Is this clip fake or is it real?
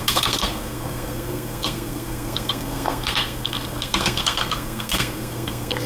fake